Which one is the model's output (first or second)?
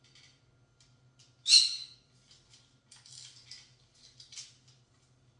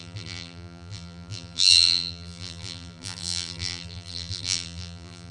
second